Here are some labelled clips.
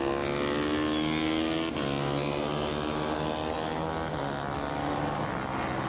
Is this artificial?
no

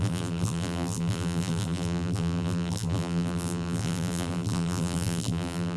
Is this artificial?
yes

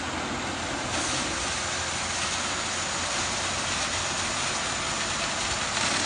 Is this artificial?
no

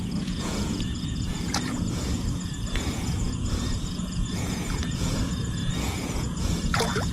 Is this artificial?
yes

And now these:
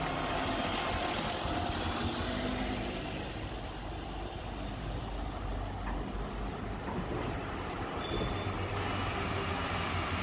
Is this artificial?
no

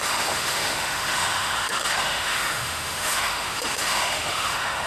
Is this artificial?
yes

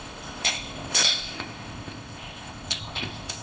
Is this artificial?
yes